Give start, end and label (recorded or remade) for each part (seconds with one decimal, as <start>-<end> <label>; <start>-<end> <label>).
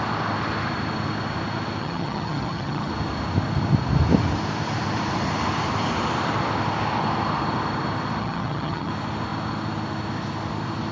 0.0-1.8 recorded; 1.8-2.9 remade; 2.9-8.2 recorded; 8.2-8.9 remade; 8.9-10.9 recorded